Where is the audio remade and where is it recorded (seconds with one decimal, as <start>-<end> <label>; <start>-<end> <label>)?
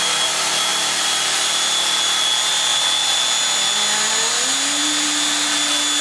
0.0-0.7 recorded; 0.7-2.3 remade; 2.3-2.7 recorded; 2.7-3.2 remade; 3.2-6.0 recorded